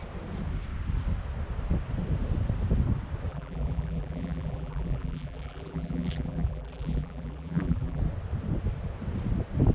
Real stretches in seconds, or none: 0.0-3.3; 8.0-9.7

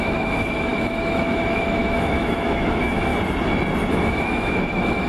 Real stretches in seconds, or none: 3.1-3.9

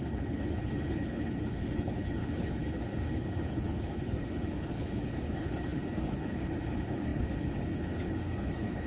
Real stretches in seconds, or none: none

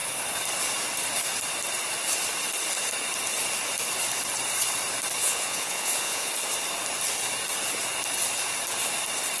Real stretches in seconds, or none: 0.0-5.2; 6.3-9.4

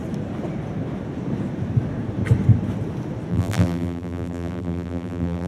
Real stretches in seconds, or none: 0.0-3.3